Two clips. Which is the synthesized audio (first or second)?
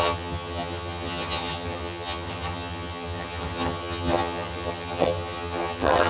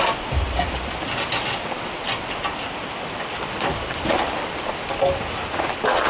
first